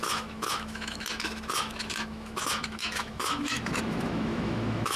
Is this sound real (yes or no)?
no